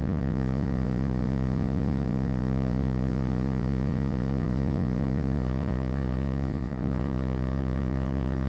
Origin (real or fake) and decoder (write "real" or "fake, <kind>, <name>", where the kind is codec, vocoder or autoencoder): fake, vocoder, Vocos